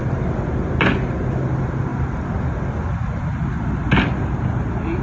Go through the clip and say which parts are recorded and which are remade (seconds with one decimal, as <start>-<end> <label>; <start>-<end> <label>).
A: 0.0-5.0 recorded